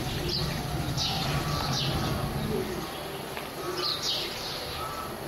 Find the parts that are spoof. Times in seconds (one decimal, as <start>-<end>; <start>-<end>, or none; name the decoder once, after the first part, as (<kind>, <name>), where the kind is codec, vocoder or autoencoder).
3.9-4.8 (vocoder, BigVGAN v2)